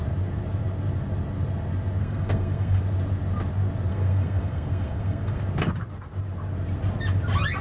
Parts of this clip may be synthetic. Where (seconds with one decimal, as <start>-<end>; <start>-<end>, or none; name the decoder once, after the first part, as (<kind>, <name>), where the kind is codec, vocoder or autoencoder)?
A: 2.0-2.8 (codec, SNAC); 3.9-5.4